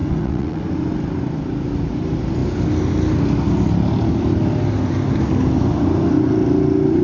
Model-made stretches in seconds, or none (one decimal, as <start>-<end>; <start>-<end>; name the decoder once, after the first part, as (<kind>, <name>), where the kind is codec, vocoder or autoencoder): 0.0-0.6 (vocoder, WaveNeXt)